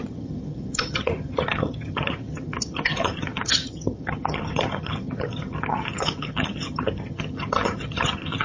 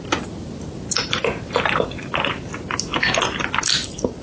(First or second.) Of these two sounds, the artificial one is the first